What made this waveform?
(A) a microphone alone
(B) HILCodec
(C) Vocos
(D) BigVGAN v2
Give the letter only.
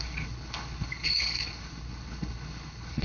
B